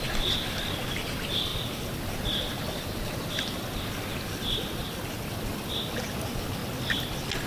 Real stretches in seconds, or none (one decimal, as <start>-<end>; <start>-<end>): 0.0-7.5